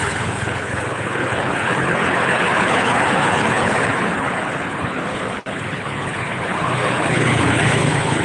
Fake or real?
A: fake